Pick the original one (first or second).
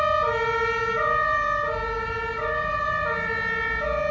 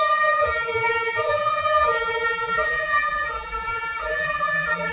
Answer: first